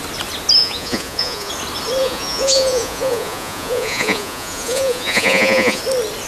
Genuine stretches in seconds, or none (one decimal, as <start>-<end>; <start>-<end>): 0.0-0.6; 1.5-2.0; 5.8-6.3